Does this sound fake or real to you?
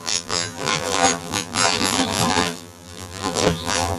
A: fake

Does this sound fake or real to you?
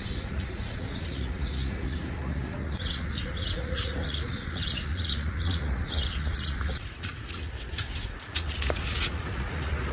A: fake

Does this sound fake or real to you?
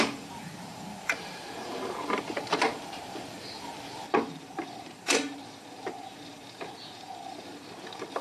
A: fake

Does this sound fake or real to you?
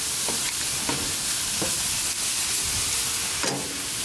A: real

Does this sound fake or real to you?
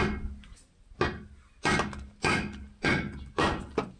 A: real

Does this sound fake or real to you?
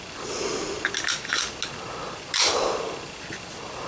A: real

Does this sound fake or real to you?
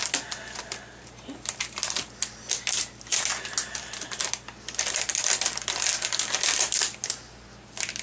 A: real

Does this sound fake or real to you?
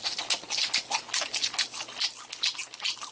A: real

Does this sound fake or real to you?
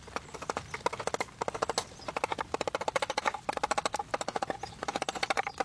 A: real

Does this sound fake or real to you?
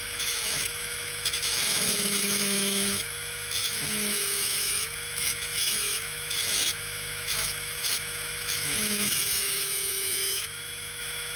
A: fake